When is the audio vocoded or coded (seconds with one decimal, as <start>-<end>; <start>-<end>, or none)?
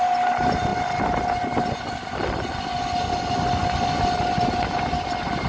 none